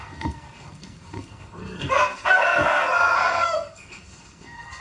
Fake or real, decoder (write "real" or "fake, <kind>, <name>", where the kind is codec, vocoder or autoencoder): fake, codec, SNAC